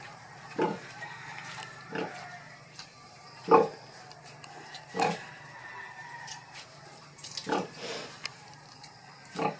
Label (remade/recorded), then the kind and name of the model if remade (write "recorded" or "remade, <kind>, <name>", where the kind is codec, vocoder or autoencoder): remade, vocoder, BigVGAN v2